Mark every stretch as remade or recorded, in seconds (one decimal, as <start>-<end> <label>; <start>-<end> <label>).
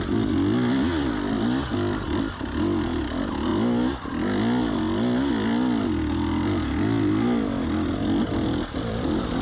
0.0-9.4 recorded